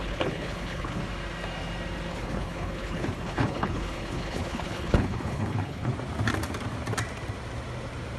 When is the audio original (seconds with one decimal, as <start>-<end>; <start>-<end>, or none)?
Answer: 1.0-2.1; 5.9-8.2